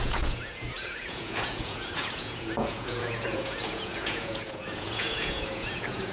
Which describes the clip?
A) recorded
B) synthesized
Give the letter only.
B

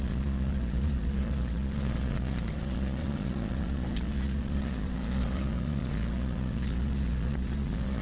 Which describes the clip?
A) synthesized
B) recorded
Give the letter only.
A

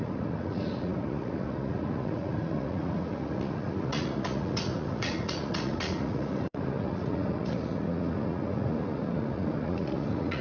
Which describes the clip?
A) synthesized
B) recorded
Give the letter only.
A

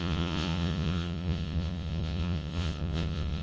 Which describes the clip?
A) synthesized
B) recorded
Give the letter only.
A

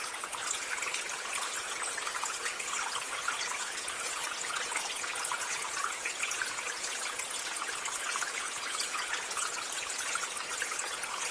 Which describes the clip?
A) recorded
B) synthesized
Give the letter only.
B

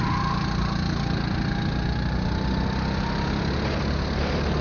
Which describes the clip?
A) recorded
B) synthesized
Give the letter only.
A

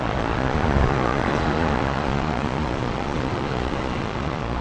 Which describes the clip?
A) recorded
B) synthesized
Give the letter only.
B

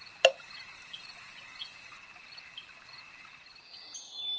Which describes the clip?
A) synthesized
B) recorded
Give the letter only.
B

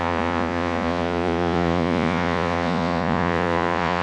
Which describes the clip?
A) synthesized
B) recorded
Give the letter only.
A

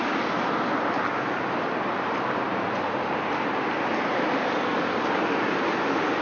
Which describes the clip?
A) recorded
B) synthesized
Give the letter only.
A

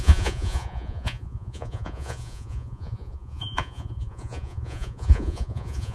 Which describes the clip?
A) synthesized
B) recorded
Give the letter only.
A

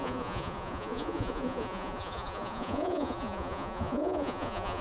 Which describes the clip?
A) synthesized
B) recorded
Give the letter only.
A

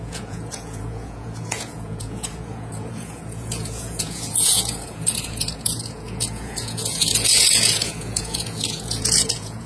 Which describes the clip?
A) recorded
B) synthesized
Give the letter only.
B